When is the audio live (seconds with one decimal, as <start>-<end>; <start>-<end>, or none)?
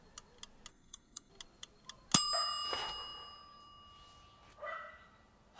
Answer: 0.0-0.7; 1.3-5.6